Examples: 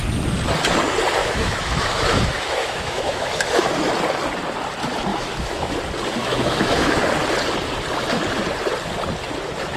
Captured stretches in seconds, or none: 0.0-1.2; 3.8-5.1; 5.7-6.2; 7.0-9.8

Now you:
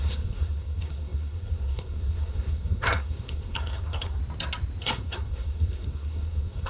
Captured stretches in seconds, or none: 4.2-4.8

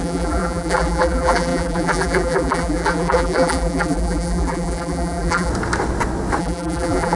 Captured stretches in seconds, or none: 5.5-6.4

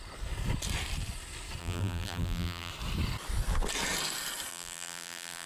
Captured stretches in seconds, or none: 0.0-1.6; 2.7-4.5

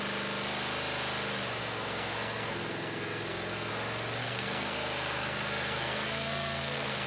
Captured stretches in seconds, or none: 0.0-1.6; 3.7-4.2

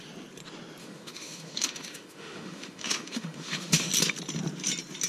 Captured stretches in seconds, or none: 0.0-0.8; 3.9-5.1

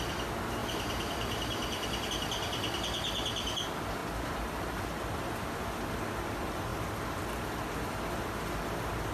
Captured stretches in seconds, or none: 0.0-0.6; 2.1-9.1